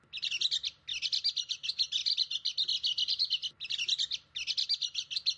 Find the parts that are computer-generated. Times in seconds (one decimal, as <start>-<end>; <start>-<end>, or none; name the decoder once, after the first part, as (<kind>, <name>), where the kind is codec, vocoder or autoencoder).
none